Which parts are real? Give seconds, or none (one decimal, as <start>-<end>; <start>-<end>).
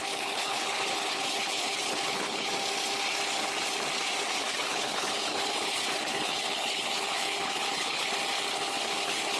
2.5-4.4; 8.1-9.4